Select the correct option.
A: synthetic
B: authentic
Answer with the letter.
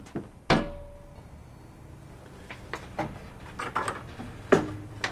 B